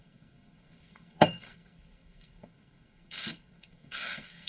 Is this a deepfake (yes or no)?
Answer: yes